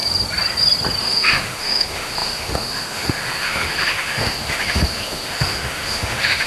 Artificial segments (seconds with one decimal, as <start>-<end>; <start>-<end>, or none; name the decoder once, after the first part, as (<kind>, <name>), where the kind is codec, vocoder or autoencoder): 1.0-6.5 (autoencoder, DAC-VAE)